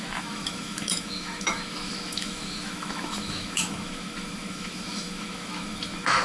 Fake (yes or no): yes